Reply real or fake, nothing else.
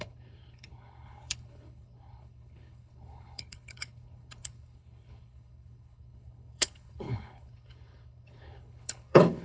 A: fake